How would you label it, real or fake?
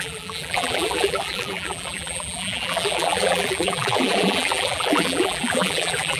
fake